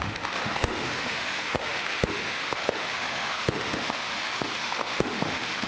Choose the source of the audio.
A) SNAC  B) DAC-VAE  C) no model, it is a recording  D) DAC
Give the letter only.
B